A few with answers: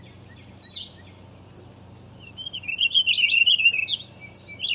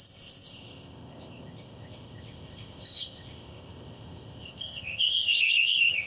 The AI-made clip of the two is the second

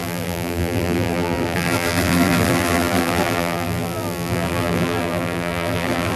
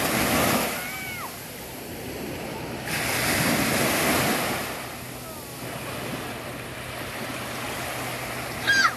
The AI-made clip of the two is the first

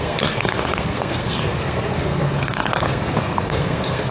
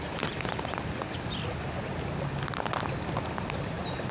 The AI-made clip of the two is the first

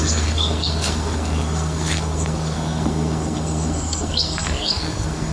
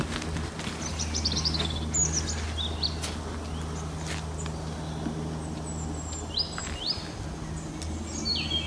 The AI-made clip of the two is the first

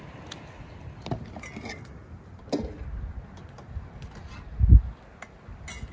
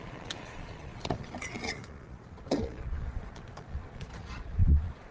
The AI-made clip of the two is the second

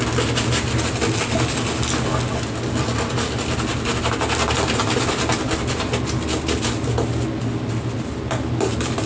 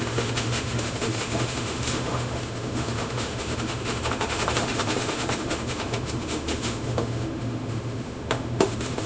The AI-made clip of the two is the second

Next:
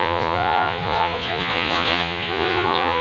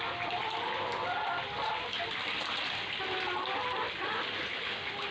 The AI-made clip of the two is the first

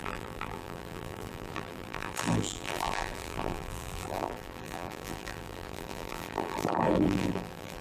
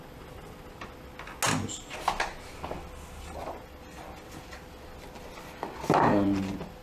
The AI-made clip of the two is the first